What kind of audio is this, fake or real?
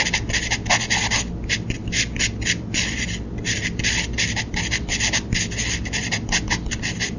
real